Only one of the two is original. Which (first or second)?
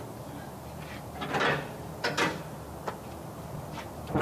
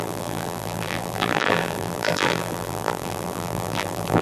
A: first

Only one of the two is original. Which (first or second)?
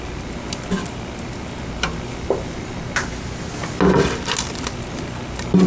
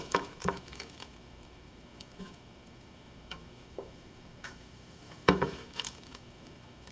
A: first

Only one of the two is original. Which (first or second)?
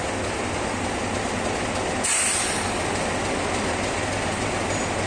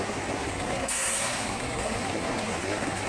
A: first